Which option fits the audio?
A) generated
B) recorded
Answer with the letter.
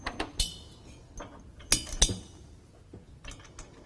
B